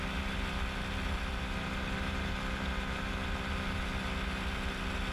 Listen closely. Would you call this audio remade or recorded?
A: recorded